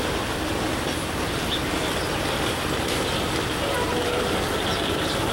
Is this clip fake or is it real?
real